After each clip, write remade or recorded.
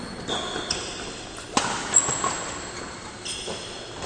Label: recorded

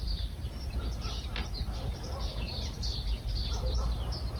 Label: remade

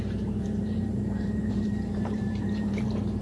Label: remade